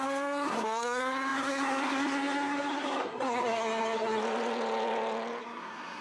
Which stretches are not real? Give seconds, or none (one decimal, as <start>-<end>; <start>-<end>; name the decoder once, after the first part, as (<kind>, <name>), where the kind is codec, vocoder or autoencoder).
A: 0.0-4.2 (codec, SNAC); 5.4-6.0